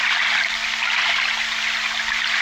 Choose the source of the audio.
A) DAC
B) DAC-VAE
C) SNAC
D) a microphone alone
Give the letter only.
D